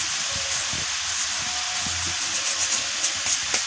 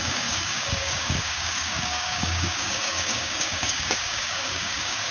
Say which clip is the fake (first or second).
second